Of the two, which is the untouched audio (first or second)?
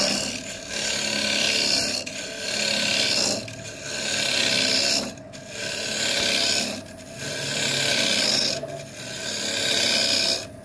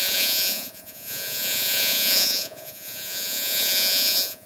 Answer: first